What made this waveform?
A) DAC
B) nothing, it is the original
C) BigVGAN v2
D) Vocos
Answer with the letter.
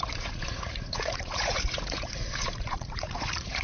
D